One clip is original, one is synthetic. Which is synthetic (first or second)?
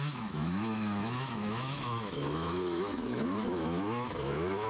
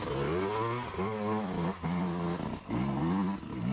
first